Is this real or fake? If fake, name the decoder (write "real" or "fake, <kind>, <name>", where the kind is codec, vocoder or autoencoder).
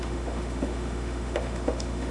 fake, autoencoder, DAC-VAE